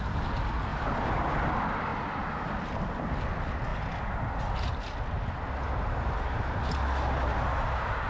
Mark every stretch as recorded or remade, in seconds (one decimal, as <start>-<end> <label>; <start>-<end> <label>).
0.0-0.7 recorded; 0.7-1.3 remade; 1.3-1.9 recorded; 1.9-2.7 remade; 2.7-8.1 recorded